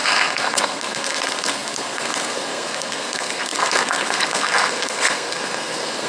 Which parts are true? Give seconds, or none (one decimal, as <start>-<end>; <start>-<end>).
none